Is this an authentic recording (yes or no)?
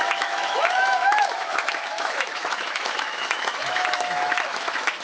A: no